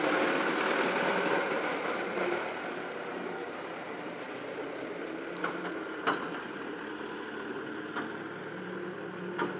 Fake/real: real